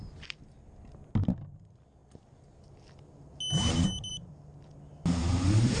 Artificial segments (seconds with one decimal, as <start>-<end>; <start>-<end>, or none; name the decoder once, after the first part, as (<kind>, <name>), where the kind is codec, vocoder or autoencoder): 5.2-5.8 (vocoder, BigVGAN v2)